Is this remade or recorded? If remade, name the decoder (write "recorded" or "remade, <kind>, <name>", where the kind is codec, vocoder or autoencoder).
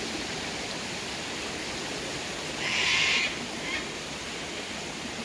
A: recorded